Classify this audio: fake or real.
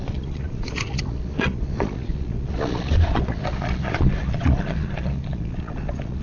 fake